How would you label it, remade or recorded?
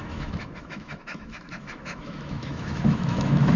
remade